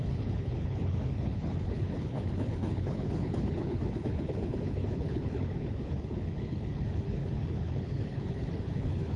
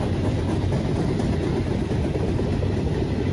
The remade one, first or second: first